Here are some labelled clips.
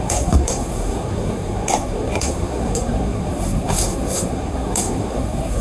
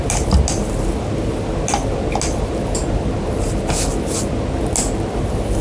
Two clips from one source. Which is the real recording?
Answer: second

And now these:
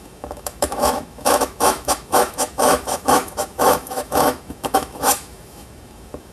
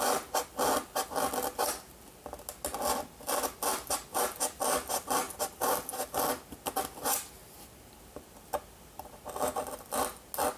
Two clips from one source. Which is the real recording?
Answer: second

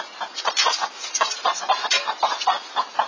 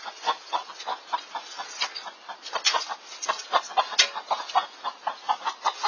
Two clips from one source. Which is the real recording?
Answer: second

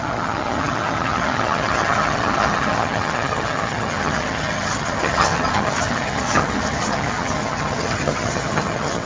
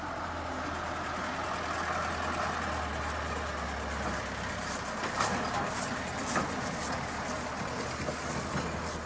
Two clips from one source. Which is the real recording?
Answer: second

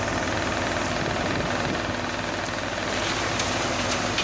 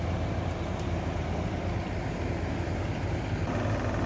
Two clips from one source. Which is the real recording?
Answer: first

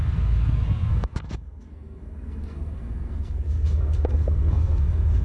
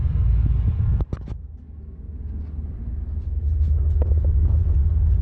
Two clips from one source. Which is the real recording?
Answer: second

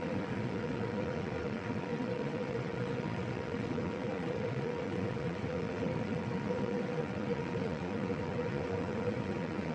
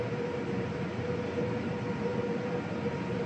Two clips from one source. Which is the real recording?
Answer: second